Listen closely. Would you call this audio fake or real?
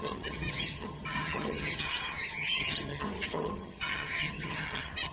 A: fake